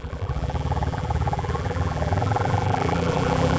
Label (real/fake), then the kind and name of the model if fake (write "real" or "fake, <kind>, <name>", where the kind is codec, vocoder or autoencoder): fake, vocoder, BigVGAN v2